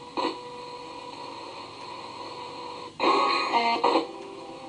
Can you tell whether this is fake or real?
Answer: real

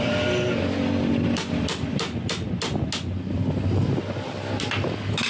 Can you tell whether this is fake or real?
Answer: real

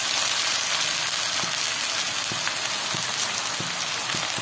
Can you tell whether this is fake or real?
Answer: real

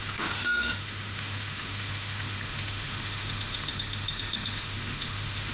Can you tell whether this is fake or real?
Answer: fake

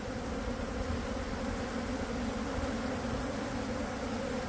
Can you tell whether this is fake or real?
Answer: real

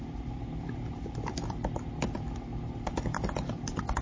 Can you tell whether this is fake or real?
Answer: fake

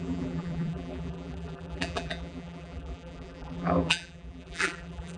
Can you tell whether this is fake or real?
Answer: fake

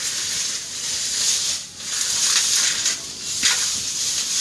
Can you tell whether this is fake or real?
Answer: real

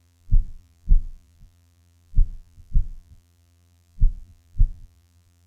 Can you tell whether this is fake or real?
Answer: fake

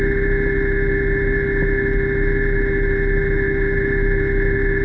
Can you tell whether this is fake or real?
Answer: real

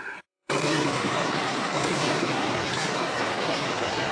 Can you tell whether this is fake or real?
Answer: fake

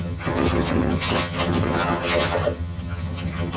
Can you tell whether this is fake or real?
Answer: fake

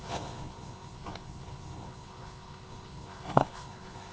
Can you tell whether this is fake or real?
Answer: fake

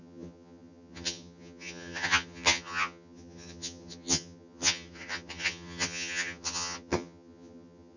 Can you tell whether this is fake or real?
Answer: fake